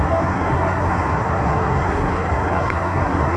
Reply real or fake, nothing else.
fake